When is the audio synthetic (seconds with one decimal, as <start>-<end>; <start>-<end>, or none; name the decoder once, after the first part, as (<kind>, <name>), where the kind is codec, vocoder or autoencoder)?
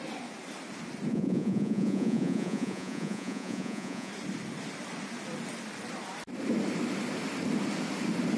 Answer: 1.1-4.1 (vocoder, Vocos)